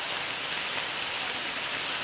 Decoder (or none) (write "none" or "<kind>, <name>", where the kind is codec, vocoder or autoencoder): none